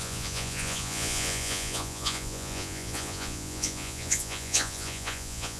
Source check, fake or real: fake